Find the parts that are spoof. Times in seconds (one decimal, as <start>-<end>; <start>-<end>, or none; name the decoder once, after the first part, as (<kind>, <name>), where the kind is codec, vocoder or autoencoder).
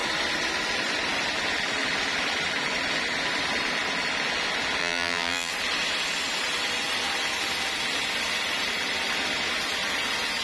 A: 4.8-5.5 (vocoder, BigVGAN v2)